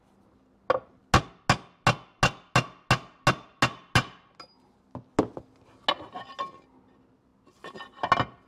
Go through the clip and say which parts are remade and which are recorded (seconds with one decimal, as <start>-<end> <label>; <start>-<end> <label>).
0.0-8.5 recorded